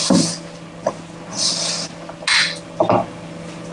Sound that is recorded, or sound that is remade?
recorded